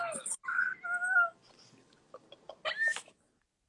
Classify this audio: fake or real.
real